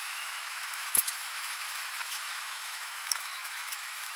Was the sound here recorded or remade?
remade